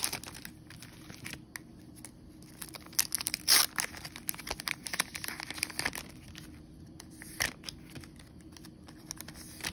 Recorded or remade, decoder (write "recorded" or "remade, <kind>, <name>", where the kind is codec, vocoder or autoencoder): recorded